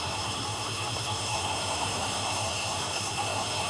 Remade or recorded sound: remade